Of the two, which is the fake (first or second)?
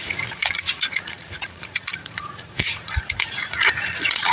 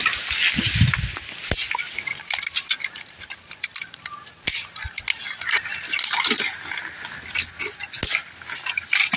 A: first